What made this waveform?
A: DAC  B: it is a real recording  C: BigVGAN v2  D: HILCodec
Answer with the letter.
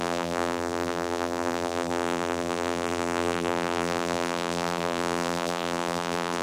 C